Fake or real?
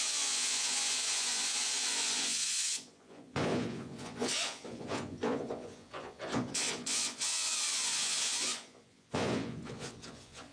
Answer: fake